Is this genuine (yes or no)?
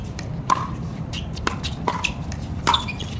no